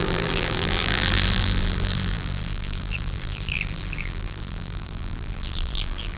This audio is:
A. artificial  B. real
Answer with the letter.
A